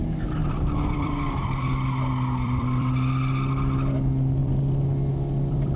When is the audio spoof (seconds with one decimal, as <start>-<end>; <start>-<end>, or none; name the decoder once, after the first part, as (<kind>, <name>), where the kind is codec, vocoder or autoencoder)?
0.4-3.9 (vocoder, BigVGAN v2); 4.4-5.8